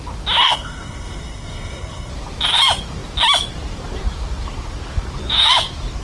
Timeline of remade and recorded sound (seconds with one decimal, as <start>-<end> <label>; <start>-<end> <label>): 0.0-0.4 recorded; 0.4-2.1 remade; 2.1-6.0 recorded